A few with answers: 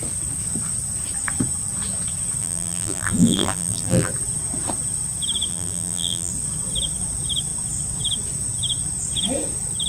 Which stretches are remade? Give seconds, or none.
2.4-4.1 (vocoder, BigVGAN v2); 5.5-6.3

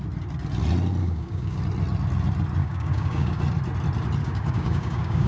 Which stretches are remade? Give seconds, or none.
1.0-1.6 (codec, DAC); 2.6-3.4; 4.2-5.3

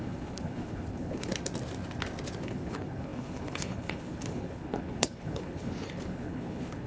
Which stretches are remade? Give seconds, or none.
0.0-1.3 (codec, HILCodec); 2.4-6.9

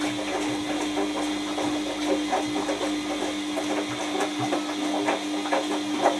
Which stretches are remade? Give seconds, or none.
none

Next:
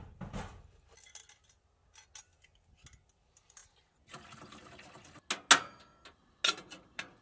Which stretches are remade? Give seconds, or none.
none